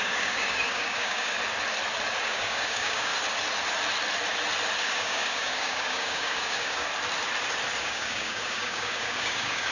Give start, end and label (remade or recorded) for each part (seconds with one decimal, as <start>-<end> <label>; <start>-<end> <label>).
0.0-1.4 remade; 1.4-2.2 recorded; 2.2-3.1 remade; 3.1-4.8 recorded; 4.8-6.9 remade; 6.9-7.8 recorded; 7.8-9.7 remade